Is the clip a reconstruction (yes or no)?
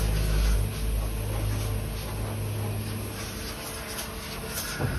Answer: no